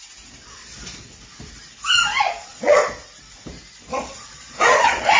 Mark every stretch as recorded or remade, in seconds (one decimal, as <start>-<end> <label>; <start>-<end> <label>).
0.0-2.2 recorded; 2.2-2.8 remade; 2.8-3.9 recorded; 3.9-5.2 remade